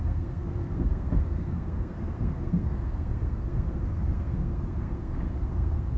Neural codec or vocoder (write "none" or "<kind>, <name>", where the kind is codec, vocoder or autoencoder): codec, SNAC